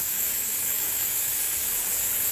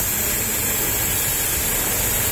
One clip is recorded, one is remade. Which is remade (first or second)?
first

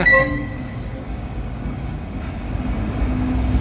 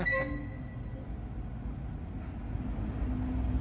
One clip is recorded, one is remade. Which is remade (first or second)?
first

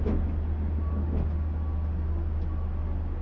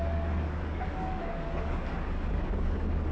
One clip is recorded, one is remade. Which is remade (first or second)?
second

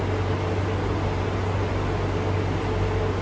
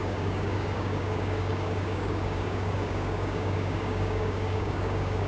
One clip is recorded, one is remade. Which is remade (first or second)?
second